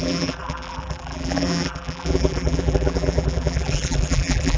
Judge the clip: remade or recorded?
remade